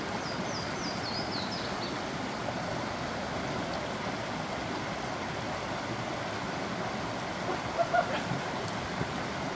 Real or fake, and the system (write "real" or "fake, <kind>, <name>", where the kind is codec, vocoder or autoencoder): real